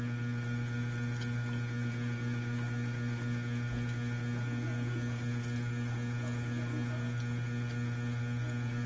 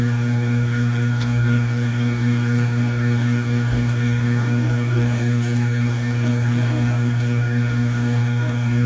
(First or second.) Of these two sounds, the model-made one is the second